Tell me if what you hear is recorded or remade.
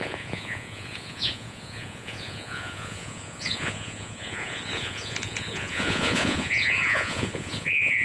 remade